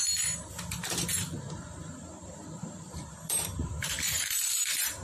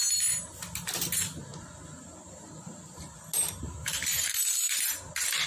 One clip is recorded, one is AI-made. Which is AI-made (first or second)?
first